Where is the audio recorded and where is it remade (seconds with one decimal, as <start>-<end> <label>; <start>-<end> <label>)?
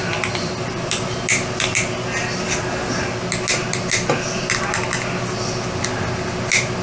0.0-1.2 remade; 1.2-6.8 recorded